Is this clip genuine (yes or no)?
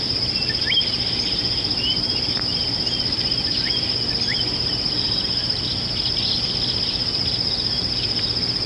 yes